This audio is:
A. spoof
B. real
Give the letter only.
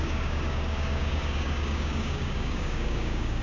A